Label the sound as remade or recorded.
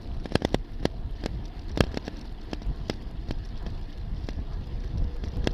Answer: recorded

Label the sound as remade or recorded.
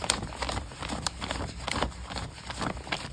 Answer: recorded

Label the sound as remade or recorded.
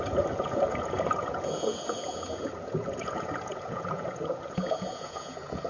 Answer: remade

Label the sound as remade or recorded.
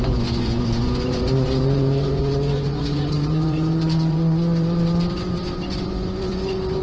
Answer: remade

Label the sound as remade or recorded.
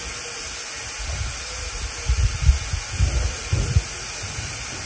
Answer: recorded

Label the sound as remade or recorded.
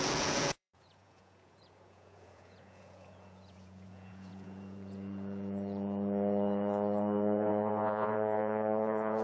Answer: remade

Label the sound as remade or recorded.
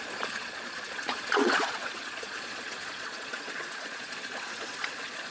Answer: remade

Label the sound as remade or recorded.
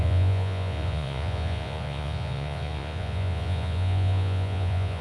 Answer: remade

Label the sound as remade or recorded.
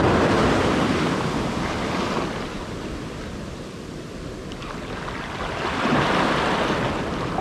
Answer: recorded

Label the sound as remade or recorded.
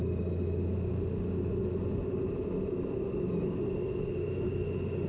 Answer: recorded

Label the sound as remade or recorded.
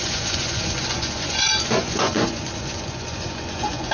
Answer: remade